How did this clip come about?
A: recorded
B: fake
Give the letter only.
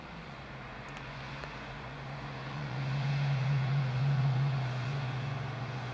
B